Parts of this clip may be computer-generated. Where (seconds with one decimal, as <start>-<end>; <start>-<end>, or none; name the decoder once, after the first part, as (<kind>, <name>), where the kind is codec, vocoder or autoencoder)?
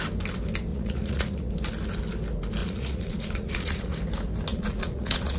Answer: 0.7-1.5 (vocoder, Vocos); 2.6-4.0; 4.5-5.4